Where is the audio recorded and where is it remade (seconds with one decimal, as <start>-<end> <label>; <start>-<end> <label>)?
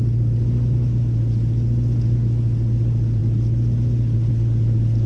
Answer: 0.0-5.1 recorded